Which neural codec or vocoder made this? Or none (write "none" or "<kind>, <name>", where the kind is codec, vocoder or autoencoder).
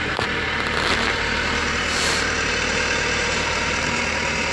vocoder, BigVGAN v2